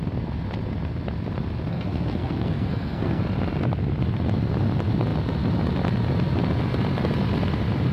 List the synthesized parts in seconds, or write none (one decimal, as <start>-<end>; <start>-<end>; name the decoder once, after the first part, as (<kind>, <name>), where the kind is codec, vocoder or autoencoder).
1.7-3.2 (codec, SNAC)

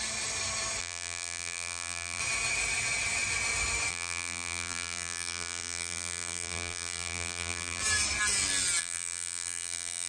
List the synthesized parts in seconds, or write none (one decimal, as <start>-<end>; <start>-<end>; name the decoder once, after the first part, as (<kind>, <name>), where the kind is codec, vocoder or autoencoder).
0.8-2.2 (vocoder, BigVGAN v2); 3.9-7.8; 8.8-10.1

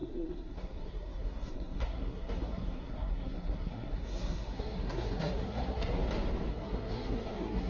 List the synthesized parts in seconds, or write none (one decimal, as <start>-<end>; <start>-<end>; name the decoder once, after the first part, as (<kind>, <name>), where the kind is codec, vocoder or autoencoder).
0.0-6.0 (codec, SNAC); 6.5-7.7

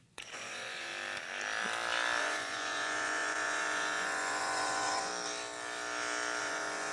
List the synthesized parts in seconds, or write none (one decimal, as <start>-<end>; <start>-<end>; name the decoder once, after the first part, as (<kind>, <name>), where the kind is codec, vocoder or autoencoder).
0.0-0.9 (vocoder, Vocos); 2.2-5.1; 6.4-6.9

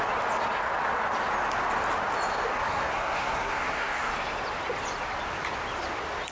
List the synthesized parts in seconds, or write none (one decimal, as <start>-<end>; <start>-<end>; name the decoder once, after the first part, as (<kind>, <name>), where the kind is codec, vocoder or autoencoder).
2.5-4.1 (codec, SNAC)

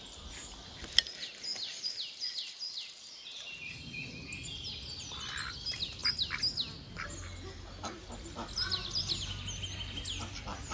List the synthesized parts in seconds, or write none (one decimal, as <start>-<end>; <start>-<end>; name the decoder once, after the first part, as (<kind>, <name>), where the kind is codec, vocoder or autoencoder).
none